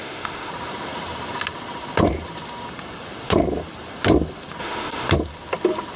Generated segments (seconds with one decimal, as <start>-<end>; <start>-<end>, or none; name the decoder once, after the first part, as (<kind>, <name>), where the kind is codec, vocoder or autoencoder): 0.0-0.5 (autoencoder, DAC-VAE); 4.6-5.1